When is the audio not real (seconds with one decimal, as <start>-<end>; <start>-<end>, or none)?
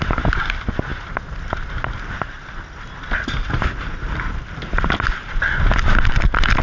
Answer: none